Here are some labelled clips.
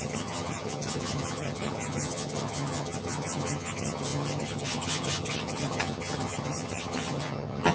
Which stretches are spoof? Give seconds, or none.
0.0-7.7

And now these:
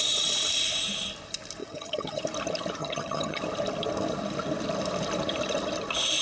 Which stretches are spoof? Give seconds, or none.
1.6-2.2; 2.8-3.4

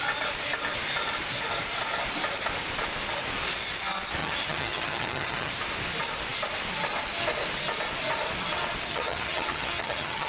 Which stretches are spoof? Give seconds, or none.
4.2-5.5; 8.9-10.3

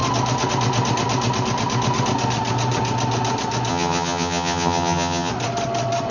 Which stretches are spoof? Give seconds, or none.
3.7-5.3

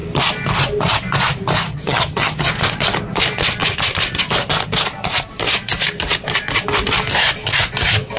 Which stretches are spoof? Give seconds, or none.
1.7-2.5

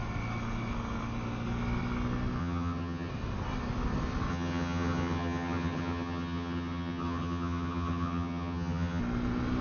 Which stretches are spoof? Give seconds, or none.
2.4-3.1; 4.3-9.0